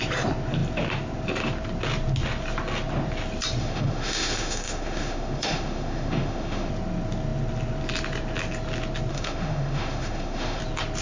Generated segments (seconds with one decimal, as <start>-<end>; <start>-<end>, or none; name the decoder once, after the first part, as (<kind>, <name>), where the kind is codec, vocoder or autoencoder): 3.6-6.7 (autoencoder, DAC-VAE); 9.1-10.6